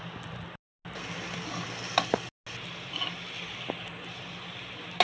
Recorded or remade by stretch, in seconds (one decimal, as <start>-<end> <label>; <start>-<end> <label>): 0.0-5.0 recorded